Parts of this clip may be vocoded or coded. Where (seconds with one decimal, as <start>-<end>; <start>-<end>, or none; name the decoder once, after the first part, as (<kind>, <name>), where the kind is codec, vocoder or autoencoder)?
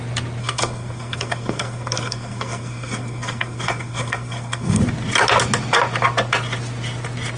0.4-4.8 (codec, SNAC)